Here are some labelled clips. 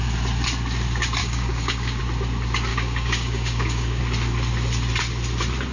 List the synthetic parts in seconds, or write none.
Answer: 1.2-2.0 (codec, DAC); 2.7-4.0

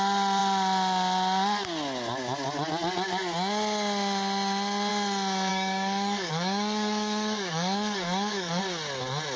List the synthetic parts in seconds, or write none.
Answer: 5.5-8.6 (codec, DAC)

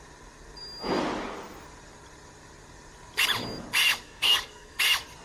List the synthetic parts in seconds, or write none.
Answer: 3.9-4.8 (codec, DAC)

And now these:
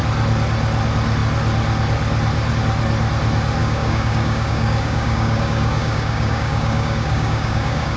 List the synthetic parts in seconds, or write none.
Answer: 3.6-8.0 (codec, DAC)

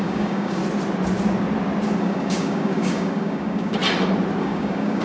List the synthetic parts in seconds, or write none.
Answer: 0.0-0.6 (codec, DAC); 2.0-3.8; 4.4-5.0